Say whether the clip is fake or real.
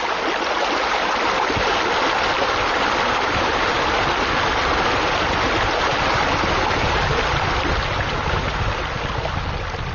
real